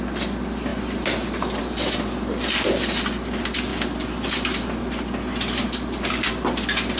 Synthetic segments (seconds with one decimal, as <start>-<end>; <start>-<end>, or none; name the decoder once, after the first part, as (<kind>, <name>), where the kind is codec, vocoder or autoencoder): none